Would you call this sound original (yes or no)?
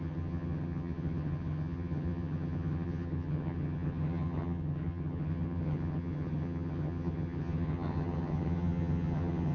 no